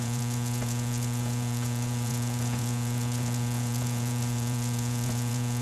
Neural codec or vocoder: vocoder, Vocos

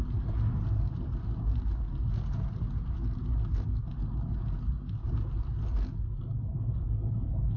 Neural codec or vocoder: none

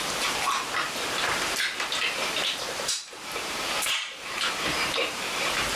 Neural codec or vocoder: vocoder, BigVGAN v2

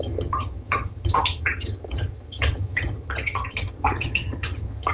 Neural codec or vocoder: vocoder, HiFi-GAN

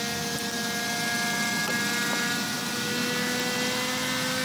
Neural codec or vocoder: none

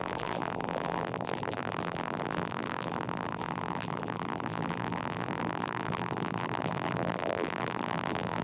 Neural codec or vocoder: vocoder, BigVGAN v2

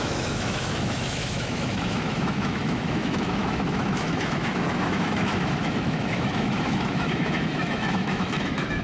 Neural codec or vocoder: autoencoder, DAC-VAE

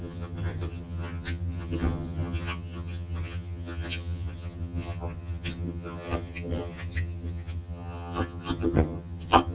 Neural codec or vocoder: vocoder, HiFi-GAN